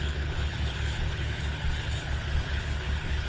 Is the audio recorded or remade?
remade